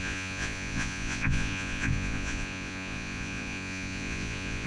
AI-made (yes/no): yes